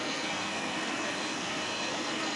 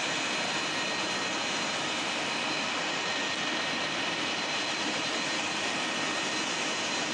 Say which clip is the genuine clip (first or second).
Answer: second